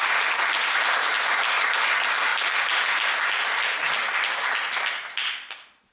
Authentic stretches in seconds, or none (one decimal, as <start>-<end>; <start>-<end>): 0.0-5.9